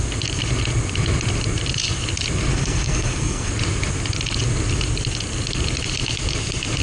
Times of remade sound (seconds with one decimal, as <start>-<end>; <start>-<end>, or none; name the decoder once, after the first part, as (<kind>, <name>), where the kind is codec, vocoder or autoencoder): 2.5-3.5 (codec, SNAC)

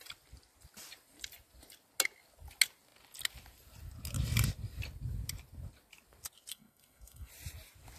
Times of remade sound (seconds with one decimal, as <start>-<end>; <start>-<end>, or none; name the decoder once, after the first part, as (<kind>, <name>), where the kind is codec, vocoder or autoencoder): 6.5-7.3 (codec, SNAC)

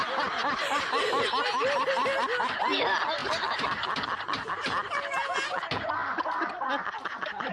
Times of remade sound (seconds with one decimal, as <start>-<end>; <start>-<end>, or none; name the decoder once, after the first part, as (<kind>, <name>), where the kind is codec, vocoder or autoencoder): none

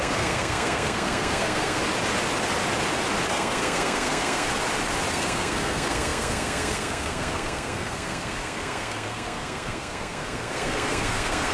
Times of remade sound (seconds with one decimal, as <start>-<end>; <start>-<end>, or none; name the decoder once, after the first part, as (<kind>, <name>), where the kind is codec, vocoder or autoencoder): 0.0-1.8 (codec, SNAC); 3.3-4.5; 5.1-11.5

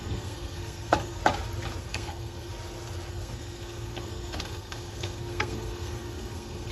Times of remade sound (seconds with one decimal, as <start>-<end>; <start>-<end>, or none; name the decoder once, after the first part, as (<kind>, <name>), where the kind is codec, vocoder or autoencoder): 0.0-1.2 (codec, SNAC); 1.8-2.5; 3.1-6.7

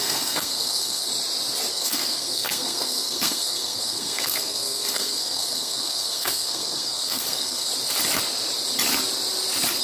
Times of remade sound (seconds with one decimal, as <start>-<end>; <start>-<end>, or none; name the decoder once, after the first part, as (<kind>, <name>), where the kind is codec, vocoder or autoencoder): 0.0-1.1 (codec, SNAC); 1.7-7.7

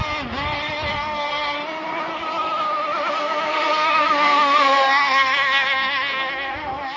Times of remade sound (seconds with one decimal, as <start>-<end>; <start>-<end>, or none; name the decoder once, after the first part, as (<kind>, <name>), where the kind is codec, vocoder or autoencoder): 0.9-1.6 (codec, SNAC); 3.1-7.0

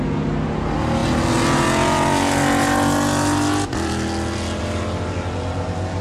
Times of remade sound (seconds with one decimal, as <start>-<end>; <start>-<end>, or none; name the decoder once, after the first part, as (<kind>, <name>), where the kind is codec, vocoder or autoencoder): none